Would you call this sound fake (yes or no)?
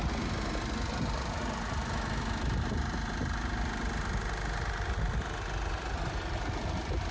no